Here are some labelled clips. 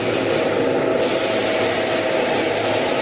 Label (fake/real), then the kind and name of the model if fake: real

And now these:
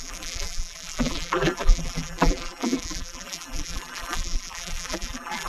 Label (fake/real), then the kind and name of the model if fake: fake, vocoder, BigVGAN v2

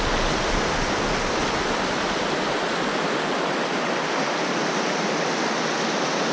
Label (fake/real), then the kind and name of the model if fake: real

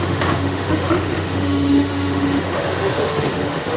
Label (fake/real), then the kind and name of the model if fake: fake, autoencoder, DAC-VAE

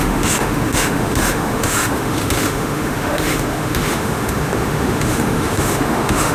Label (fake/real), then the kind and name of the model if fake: fake, autoencoder, DAC-VAE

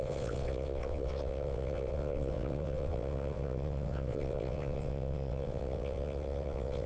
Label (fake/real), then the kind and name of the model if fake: fake, vocoder, WaveNeXt